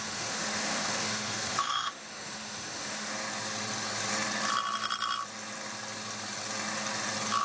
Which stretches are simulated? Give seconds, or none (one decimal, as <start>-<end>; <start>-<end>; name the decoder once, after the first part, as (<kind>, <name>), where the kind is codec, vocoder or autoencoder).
0.0-3.1 (autoencoder, DAC-VAE)